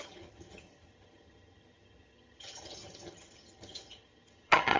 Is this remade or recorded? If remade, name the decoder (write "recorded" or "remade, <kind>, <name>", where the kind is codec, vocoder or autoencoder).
remade, vocoder, HiFi-GAN